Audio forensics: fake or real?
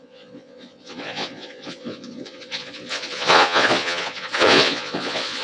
fake